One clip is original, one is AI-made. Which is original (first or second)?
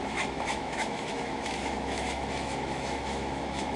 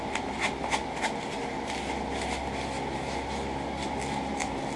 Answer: second